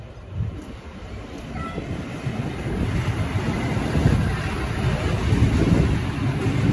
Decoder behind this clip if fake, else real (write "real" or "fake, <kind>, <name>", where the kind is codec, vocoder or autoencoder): real